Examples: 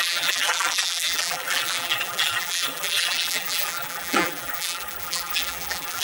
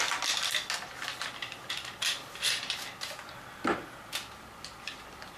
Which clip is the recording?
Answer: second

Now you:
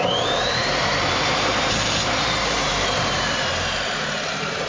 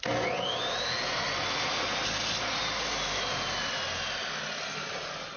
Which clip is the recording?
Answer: second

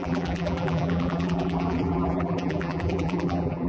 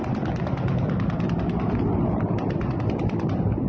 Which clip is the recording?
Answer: second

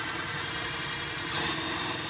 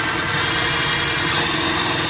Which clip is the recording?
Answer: second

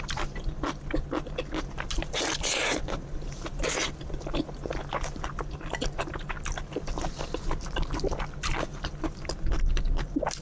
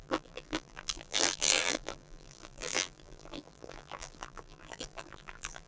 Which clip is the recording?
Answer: first